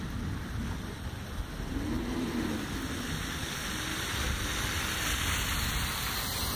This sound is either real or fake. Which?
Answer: real